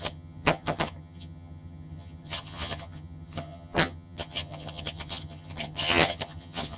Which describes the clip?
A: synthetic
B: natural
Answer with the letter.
A